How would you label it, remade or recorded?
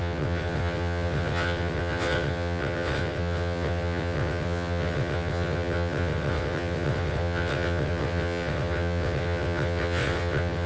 remade